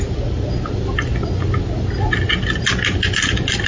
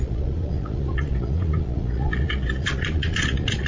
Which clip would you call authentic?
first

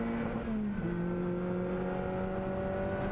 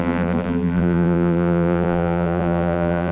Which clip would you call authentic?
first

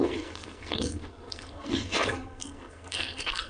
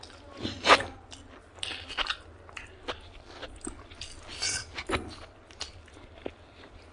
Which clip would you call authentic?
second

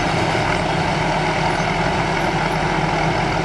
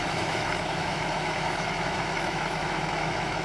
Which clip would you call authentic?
first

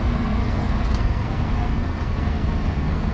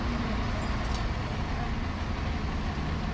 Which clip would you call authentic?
second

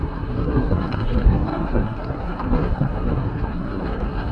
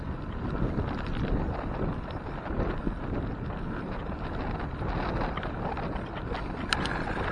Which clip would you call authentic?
second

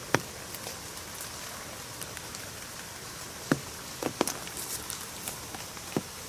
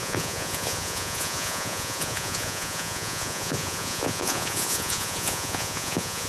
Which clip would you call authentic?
first